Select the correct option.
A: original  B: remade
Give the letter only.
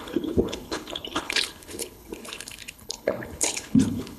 B